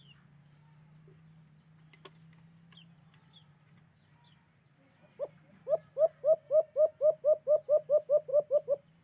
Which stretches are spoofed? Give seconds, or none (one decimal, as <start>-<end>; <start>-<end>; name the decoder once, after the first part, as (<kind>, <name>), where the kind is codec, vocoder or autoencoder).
8.3-9.0 (vocoder, BigVGAN v2)